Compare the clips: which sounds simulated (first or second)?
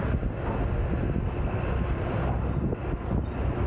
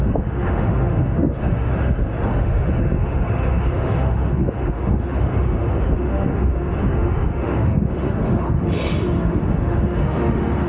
second